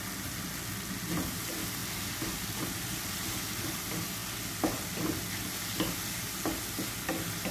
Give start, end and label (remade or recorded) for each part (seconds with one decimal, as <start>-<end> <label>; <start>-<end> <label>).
0.0-7.5 recorded

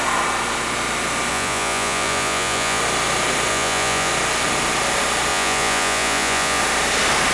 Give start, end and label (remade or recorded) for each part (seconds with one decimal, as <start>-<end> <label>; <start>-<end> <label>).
0.0-1.3 recorded; 1.3-2.8 remade; 2.8-3.5 recorded; 3.5-4.1 remade; 4.1-5.3 recorded; 5.3-6.6 remade; 6.6-7.3 recorded

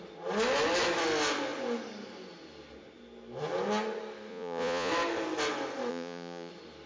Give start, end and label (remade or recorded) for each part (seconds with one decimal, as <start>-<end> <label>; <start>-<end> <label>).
0.0-4.3 recorded; 4.3-4.9 remade; 4.9-5.9 recorded; 5.9-6.5 remade; 6.5-6.9 recorded

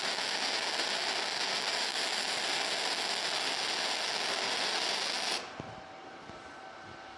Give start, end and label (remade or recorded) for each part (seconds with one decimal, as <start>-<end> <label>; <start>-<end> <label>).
0.0-7.2 recorded

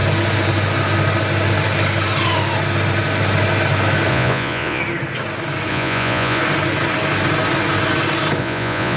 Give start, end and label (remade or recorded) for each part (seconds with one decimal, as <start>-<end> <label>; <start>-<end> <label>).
0.0-4.1 recorded; 4.1-4.8 remade; 4.8-5.7 recorded; 5.7-6.4 remade; 6.4-8.4 recorded; 8.4-9.0 remade

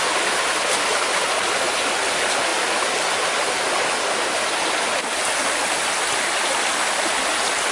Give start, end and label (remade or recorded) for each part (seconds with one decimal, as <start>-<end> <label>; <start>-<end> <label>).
0.0-7.7 recorded

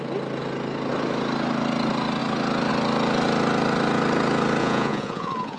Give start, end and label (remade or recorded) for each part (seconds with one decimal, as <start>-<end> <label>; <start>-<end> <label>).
0.0-4.6 recorded; 4.6-5.6 remade